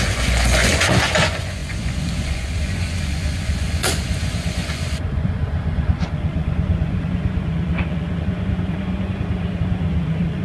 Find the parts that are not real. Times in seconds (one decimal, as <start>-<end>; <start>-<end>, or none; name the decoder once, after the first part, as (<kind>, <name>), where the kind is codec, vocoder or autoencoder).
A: 0.0-10.4 (vocoder, Vocos)